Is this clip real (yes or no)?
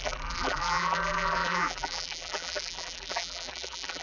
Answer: no